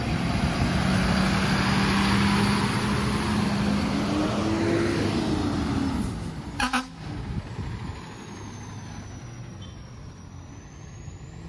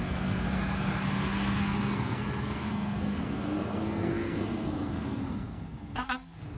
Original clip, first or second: first